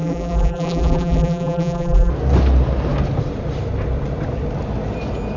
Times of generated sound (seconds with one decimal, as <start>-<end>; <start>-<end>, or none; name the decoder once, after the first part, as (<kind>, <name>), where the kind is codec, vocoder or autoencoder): 0.0-2.1 (vocoder, BigVGAN v2)